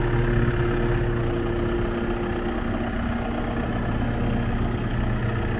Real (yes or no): yes